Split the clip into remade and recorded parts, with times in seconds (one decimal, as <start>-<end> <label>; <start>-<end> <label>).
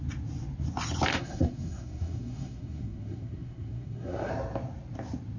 0.0-1.1 recorded; 1.1-4.3 remade; 4.3-5.4 recorded